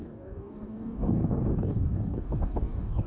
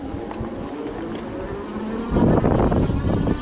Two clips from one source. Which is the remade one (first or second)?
first